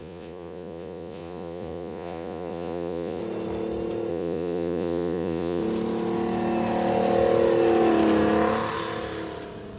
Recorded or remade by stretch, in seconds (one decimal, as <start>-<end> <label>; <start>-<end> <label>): 0.0-3.2 remade; 3.2-4.1 recorded; 4.1-5.6 remade; 5.6-9.8 recorded